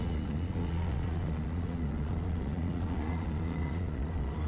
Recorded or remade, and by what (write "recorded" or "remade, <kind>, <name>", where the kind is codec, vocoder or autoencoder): remade, vocoder, Vocos